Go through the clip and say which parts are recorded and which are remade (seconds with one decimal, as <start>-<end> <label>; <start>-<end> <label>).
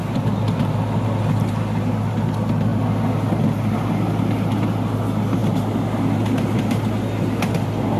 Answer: 0.0-8.0 recorded